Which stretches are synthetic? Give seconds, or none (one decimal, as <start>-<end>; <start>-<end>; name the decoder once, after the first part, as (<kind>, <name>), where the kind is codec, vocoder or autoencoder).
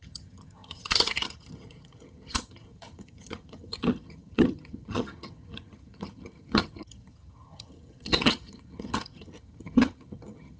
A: 0.0-10.6 (vocoder, HiFi-GAN)